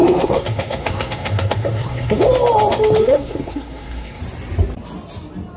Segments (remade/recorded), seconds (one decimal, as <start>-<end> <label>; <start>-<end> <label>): 0.0-2.2 remade; 2.2-3.0 recorded; 3.0-4.2 remade; 4.2-5.6 recorded